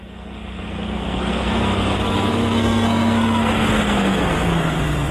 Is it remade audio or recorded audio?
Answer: remade